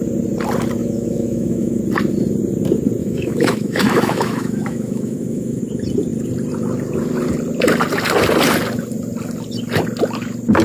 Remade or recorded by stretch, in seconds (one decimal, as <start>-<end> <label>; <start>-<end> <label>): 0.0-0.8 recorded; 0.8-1.8 remade; 1.8-3.0 recorded; 3.0-5.6 remade; 5.6-10.6 recorded